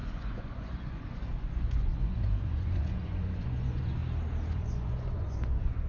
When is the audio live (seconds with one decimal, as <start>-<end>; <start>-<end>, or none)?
4.0-4.5